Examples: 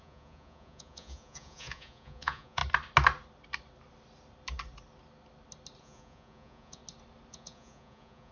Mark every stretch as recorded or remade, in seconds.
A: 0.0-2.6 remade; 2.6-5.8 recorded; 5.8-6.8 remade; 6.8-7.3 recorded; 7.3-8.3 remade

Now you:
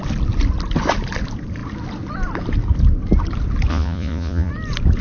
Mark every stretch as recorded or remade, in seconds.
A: 0.0-3.7 recorded; 3.7-4.5 remade; 4.5-5.0 recorded

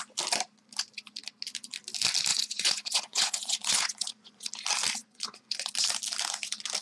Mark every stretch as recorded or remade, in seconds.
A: 0.0-2.3 recorded; 2.3-4.5 remade; 4.5-5.0 recorded; 5.0-5.7 remade; 5.7-6.8 recorded

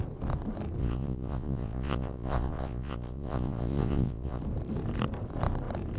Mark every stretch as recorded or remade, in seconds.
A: 0.0-0.8 recorded; 0.8-4.4 remade; 4.4-6.0 recorded

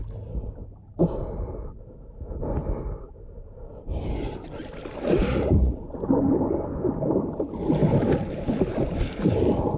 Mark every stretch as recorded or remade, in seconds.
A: 0.0-5.3 recorded; 5.3-5.9 remade; 5.9-9.8 recorded

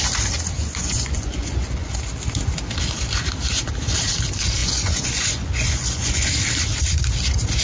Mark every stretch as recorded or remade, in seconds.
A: 0.0-0.6 recorded; 0.6-1.9 remade; 1.9-4.6 recorded; 4.6-6.3 remade; 6.3-7.6 recorded